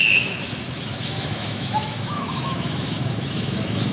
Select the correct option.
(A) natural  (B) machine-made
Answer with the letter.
B